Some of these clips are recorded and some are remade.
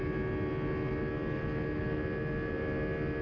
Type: recorded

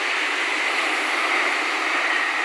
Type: recorded